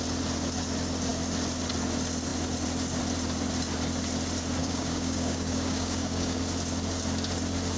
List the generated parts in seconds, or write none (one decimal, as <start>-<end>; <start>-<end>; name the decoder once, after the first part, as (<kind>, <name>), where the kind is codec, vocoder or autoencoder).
4.6-6.4 (codec, DAC)